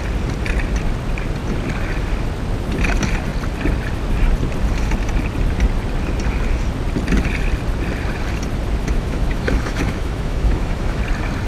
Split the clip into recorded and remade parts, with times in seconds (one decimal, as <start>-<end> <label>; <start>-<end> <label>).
0.0-8.8 recorded; 8.8-11.0 remade; 11.0-11.5 recorded